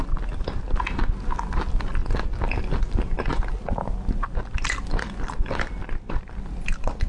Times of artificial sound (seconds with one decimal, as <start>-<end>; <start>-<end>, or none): 0.0-2.0; 2.6-7.1